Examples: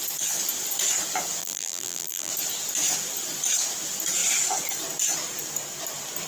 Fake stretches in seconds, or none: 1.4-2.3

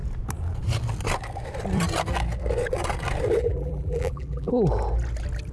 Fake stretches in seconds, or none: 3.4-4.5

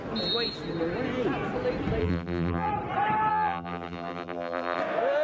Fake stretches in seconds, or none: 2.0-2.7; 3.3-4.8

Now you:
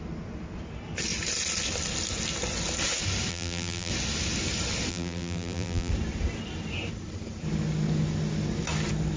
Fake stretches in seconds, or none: 3.3-3.9; 4.9-5.9

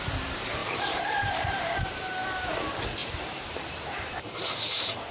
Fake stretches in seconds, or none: 0.6-1.8; 3.0-5.1